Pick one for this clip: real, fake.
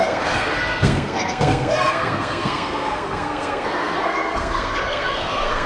fake